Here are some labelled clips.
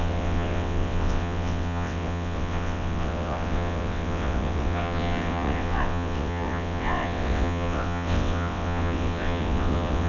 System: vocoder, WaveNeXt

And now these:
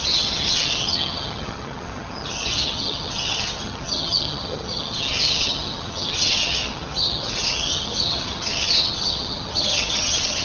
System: vocoder, HiFi-GAN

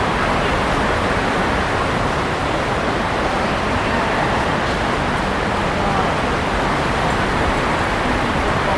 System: none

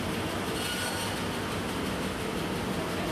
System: none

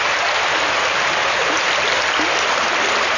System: none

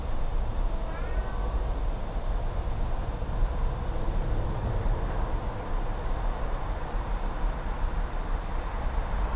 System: none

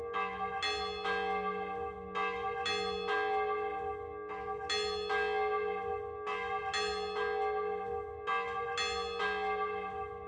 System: none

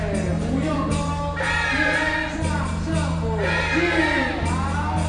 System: none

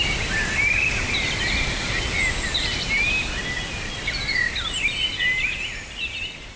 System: none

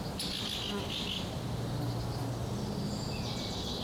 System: none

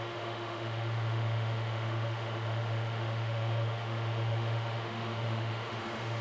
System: autoencoder, DAC-VAE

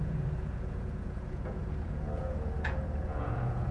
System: vocoder, Vocos